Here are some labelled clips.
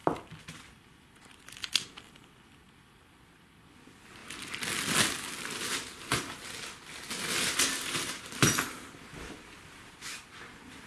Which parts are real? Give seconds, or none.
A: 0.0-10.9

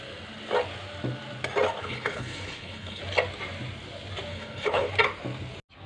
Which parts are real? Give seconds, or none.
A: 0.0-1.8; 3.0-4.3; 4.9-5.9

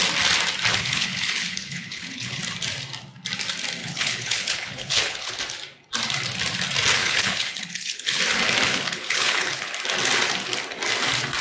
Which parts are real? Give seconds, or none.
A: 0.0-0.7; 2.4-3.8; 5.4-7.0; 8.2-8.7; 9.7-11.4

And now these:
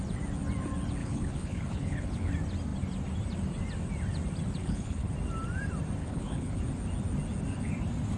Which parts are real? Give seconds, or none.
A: 0.0-1.0; 2.3-4.6; 5.1-6.0; 6.6-8.2